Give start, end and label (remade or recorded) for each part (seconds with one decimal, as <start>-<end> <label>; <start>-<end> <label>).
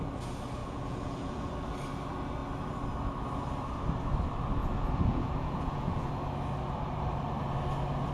0.0-0.6 recorded; 0.6-1.5 remade; 1.5-4.6 recorded; 4.6-6.1 remade; 6.1-8.1 recorded